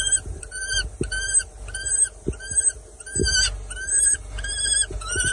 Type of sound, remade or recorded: recorded